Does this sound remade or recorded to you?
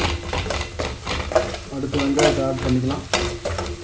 recorded